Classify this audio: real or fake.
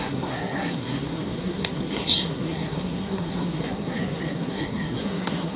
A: fake